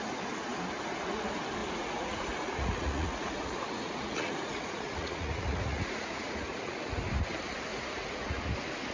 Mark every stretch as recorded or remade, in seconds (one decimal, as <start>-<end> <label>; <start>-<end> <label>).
0.0-1.6 recorded; 1.6-6.8 remade; 6.8-7.7 recorded; 7.7-8.5 remade; 8.5-8.9 recorded

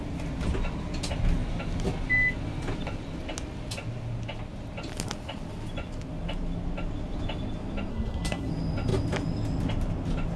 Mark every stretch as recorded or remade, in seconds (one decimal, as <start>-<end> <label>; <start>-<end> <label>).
0.0-7.9 recorded; 7.9-8.5 remade; 8.5-10.4 recorded

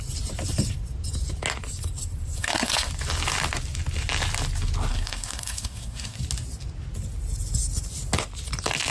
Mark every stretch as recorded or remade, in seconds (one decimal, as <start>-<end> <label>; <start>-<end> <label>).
0.0-2.4 recorded; 2.4-2.9 remade; 2.9-4.9 recorded; 4.9-6.2 remade; 6.2-8.9 recorded

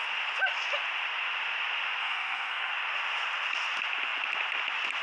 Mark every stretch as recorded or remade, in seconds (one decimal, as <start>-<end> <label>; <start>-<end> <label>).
0.0-2.0 recorded; 2.0-2.7 remade; 2.7-5.0 recorded

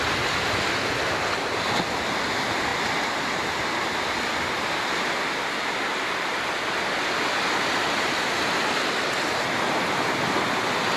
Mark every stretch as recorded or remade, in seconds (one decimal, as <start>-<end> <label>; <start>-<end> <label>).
0.0-11.0 recorded

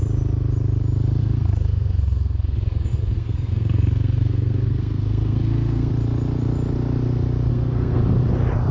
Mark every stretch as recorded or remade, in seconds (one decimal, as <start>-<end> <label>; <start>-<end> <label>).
0.0-1.2 recorded; 1.2-5.9 remade; 5.9-7.5 recorded; 7.5-8.0 remade; 8.0-8.7 recorded

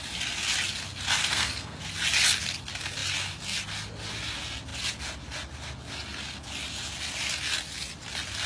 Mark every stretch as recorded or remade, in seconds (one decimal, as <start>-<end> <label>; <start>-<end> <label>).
0.0-1.2 recorded; 1.2-1.8 remade; 1.8-8.5 recorded